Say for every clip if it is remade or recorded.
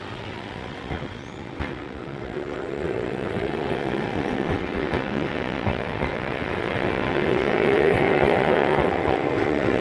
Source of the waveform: remade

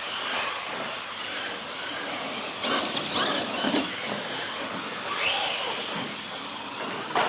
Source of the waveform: recorded